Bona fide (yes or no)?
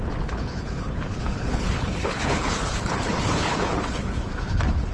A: no